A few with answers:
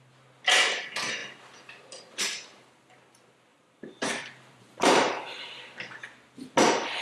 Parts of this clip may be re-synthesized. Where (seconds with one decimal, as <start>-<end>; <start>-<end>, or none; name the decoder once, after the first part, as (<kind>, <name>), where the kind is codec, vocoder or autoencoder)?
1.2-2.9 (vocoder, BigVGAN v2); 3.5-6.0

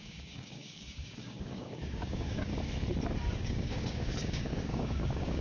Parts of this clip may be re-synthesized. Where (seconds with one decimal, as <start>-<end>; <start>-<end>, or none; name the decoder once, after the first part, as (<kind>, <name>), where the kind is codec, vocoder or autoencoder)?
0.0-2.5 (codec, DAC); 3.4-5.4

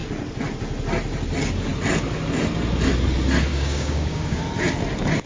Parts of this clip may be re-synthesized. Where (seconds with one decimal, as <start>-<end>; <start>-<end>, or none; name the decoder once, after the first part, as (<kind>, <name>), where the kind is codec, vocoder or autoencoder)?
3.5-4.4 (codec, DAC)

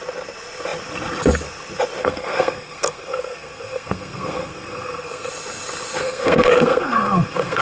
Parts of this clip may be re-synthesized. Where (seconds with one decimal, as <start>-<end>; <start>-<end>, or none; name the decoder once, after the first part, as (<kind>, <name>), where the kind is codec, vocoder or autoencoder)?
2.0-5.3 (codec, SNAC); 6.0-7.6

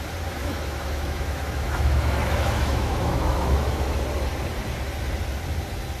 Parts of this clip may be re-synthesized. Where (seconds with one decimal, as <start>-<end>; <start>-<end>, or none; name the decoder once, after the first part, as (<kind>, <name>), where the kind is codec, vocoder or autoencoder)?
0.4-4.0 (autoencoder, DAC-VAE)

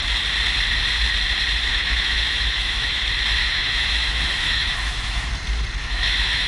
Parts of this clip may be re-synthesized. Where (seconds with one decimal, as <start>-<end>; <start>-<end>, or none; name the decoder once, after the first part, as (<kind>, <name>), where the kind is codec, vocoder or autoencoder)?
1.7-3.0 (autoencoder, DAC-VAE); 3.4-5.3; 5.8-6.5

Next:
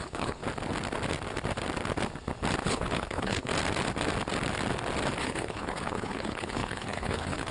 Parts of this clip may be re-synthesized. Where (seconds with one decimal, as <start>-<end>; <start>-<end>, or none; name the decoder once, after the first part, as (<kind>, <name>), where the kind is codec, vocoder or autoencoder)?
0.0-0.4 (codec, HILCodec); 2.6-3.5; 5.2-7.5